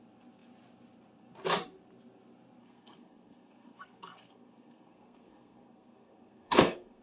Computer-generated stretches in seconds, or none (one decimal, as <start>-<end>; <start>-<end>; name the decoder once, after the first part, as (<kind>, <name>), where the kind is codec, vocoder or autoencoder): 2.6-7.0 (codec, SNAC)